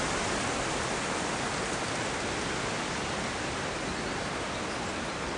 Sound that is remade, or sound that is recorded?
recorded